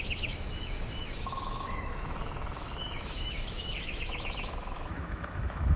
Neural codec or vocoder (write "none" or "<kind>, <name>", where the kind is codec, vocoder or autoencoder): autoencoder, DAC-VAE